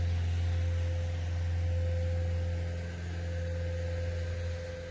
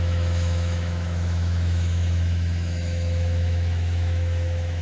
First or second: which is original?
first